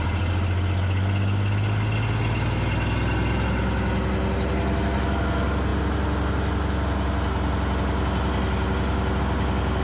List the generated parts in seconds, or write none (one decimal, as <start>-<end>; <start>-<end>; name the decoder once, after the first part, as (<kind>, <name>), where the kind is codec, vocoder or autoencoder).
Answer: none